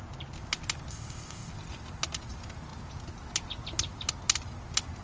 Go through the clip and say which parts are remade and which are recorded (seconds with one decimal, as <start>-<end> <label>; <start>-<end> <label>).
0.0-0.9 recorded; 0.9-1.5 remade; 1.5-5.0 recorded